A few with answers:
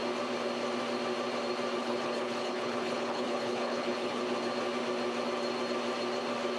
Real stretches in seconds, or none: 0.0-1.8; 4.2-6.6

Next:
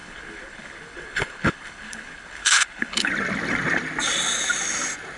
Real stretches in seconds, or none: 3.1-5.2

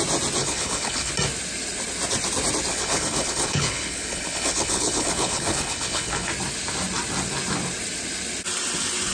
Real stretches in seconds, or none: 0.0-0.4; 1.1-2.7; 6.3-9.1